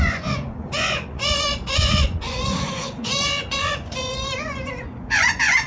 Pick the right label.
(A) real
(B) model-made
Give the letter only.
B